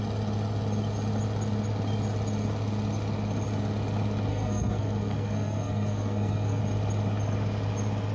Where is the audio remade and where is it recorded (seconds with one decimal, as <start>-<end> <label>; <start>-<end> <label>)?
0.0-4.3 recorded; 4.3-6.6 remade; 6.6-8.1 recorded